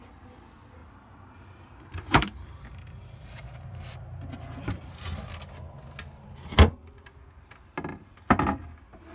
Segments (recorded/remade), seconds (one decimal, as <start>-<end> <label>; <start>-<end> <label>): 0.0-0.8 recorded; 0.8-4.0 remade; 4.0-9.1 recorded